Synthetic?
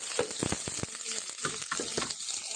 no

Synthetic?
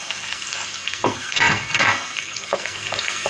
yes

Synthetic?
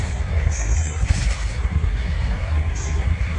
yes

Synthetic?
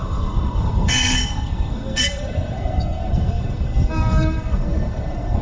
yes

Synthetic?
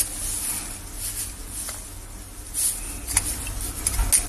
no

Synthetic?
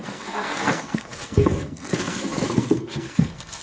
yes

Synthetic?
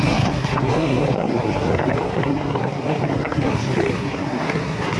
yes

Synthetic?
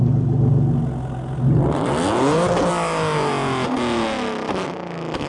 no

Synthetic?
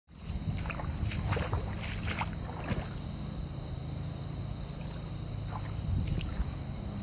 no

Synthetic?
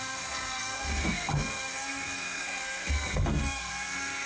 yes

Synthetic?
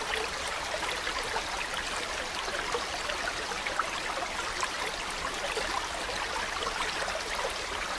no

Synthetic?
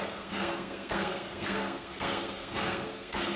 yes